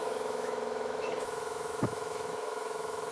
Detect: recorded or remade remade